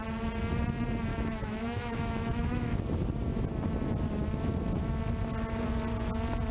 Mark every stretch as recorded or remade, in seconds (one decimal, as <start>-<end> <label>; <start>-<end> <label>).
0.0-1.1 recorded; 1.1-2.8 remade; 2.8-6.5 recorded